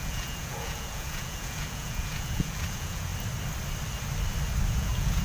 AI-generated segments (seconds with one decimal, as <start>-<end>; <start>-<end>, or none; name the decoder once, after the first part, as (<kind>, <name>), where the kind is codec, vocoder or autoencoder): 0.0-3.1 (vocoder, Vocos); 4.7-5.2